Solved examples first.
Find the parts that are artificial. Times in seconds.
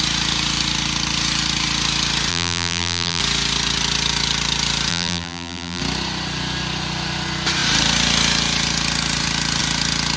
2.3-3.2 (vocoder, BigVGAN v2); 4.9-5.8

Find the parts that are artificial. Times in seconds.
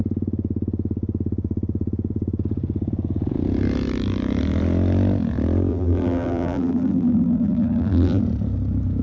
5.7-8.2 (vocoder, BigVGAN v2)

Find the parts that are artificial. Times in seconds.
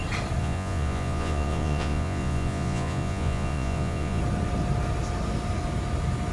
0.4-4.2 (vocoder, Vocos)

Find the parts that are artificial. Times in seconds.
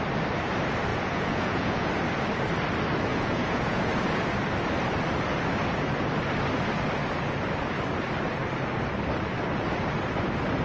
0.9-1.9 (vocoder, Vocos); 3.1-3.9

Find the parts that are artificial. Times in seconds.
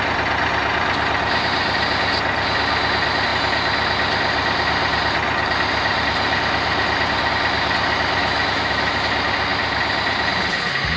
8.2-9.1 (autoencoder, DAC-VAE)